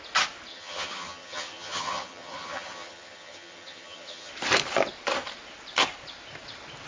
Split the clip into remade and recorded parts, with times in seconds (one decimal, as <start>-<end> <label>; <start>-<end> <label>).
0.0-0.5 recorded; 0.5-4.3 remade; 4.3-6.9 recorded